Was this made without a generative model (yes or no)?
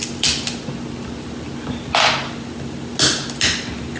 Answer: yes